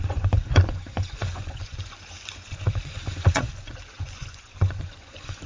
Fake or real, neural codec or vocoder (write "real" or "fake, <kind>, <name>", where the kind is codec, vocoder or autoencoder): fake, vocoder, Vocos